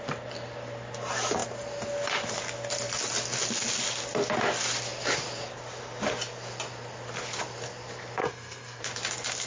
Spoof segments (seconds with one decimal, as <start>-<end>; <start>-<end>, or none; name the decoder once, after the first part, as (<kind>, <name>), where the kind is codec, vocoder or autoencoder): 8.2-8.8 (codec, SNAC)